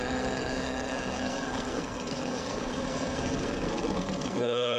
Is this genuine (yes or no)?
no